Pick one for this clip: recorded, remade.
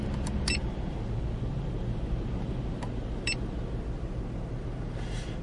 recorded